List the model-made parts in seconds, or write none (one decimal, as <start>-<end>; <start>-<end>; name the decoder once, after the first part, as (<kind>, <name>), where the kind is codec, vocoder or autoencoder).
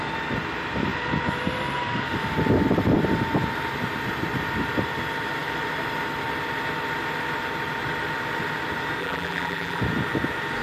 9.0-9.8 (vocoder, BigVGAN v2)